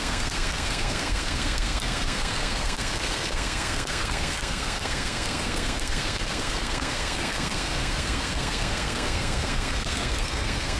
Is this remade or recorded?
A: remade